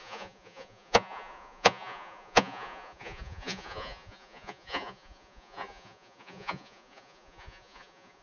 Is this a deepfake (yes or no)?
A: yes